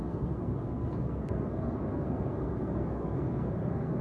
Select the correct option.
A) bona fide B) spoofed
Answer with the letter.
B